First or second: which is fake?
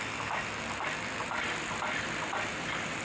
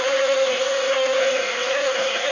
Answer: second